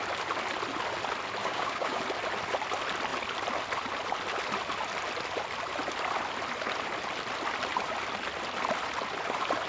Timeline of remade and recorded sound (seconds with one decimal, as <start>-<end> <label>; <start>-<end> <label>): 0.0-1.4 recorded; 1.4-2.0 remade; 2.0-9.7 recorded